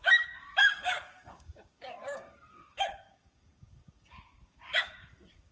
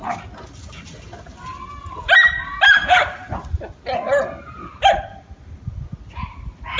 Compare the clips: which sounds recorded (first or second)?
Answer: second